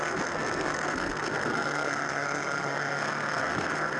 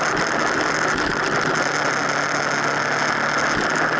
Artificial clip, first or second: first